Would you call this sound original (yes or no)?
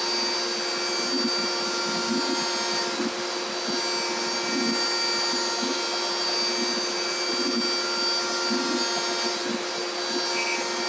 yes